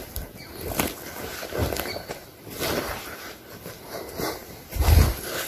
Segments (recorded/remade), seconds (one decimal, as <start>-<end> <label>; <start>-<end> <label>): 0.0-5.5 recorded